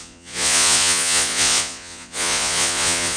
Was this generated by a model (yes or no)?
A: yes